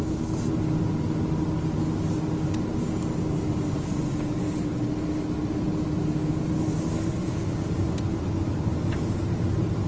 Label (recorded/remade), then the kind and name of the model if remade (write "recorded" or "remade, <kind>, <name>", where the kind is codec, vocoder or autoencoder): recorded